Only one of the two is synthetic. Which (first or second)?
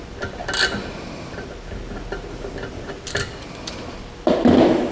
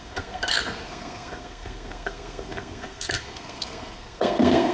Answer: second